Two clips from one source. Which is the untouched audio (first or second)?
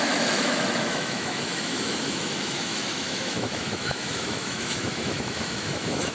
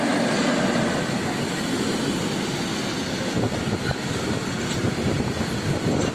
second